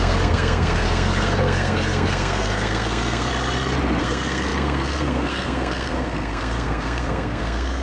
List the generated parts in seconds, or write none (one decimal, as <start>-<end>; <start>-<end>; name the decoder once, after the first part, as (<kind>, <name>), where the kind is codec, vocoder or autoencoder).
0.0-3.3 (codec, SNAC); 4.0-7.8

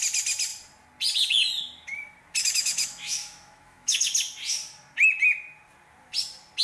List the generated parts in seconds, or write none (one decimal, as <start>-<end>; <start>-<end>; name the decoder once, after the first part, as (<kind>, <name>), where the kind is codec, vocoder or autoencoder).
2.4-4.1 (autoencoder, DAC-VAE)

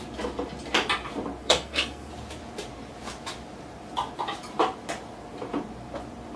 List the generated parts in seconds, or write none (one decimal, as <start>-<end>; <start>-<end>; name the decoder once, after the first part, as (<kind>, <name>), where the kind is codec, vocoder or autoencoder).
1.4-2.1 (codec, SNAC)

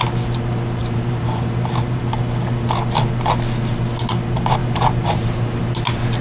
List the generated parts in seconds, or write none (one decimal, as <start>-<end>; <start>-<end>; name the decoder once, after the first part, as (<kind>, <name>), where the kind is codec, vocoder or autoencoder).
0.8-2.0 (vocoder, BigVGAN v2); 4.6-5.6

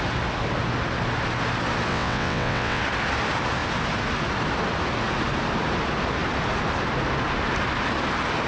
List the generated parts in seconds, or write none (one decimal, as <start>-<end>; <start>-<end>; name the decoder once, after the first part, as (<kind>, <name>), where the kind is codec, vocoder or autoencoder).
1.9-2.8 (vocoder, WaveNeXt)

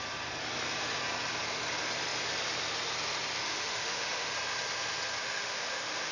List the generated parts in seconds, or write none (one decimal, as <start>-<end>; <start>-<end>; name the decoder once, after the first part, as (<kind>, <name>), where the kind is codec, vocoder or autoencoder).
3.4-4.3 (autoencoder, DAC-VAE); 5.2-6.1